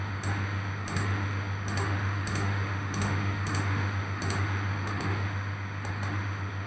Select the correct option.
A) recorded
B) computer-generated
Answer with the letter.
B